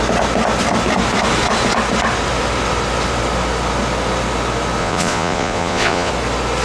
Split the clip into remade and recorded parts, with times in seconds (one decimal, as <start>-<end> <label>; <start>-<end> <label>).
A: 0.0-4.8 recorded; 4.8-6.1 remade; 6.1-6.6 recorded